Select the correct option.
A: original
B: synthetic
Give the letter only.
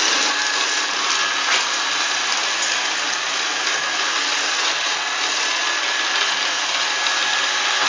A